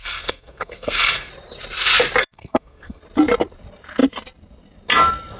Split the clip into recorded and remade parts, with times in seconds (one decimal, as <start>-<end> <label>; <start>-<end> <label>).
0.0-1.3 remade; 1.3-2.2 recorded; 2.2-3.0 remade; 3.0-5.4 recorded